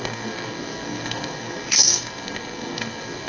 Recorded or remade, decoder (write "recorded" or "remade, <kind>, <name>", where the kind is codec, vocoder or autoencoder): remade, codec, SNAC